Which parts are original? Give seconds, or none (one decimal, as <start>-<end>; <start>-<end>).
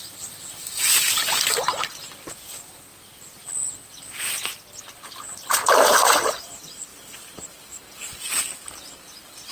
0.0-6.9; 8.4-9.5